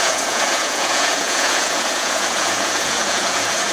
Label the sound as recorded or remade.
remade